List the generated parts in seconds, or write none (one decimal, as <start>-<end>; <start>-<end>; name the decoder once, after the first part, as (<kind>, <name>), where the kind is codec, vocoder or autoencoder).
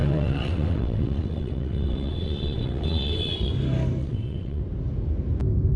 0.0-3.5 (vocoder, WaveNeXt); 4.0-4.6